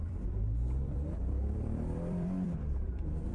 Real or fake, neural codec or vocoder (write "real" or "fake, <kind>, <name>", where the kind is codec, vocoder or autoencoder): fake, vocoder, BigVGAN v2